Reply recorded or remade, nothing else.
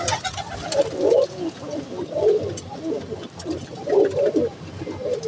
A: recorded